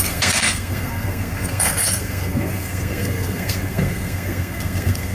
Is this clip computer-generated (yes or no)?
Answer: yes